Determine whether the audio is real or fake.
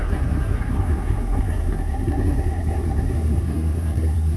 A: fake